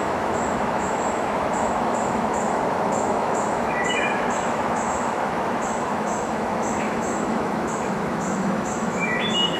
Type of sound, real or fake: fake